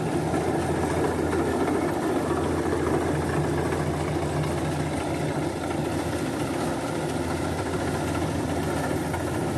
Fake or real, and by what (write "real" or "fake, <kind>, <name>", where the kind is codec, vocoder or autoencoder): real